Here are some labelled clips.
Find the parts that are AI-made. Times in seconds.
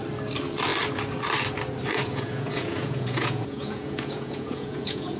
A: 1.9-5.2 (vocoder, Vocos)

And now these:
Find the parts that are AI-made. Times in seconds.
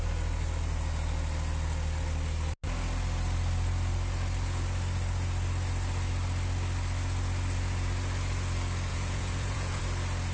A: 8.9-9.8 (vocoder, Vocos)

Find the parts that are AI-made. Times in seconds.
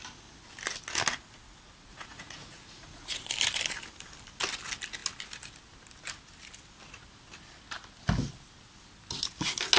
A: 1.9-3.3 (vocoder, Vocos)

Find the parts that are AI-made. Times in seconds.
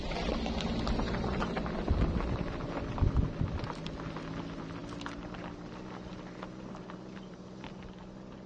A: none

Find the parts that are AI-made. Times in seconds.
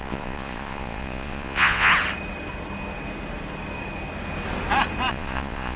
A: 0.0-1.9 (vocoder, Vocos); 5.1-5.8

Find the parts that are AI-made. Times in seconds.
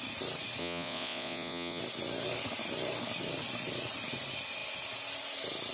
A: 0.6-1.8 (vocoder, Vocos)